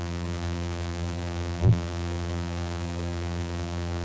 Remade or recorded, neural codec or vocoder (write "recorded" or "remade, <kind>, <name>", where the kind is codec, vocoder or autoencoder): remade, vocoder, BigVGAN v2